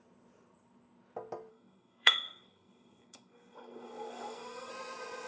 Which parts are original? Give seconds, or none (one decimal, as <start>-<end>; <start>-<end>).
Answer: 0.0-1.5; 4.7-5.3